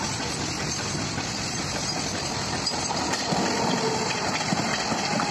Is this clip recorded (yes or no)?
no